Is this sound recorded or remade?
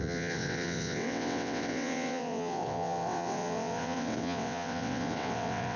remade